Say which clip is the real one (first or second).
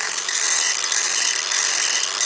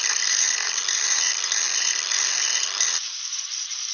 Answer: first